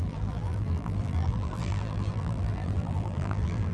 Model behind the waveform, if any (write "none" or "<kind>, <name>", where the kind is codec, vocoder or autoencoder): vocoder, BigVGAN v2